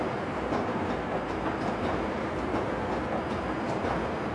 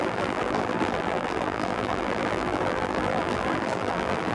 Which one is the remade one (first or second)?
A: second